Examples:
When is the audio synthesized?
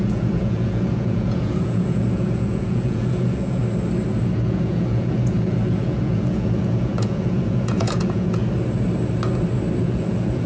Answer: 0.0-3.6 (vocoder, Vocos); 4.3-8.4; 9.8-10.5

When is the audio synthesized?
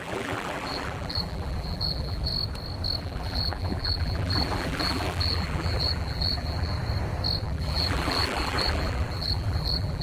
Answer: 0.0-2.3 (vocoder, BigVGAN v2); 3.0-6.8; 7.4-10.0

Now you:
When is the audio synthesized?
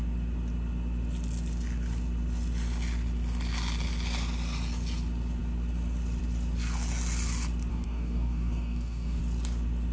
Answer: 7.7-9.2 (codec, DAC)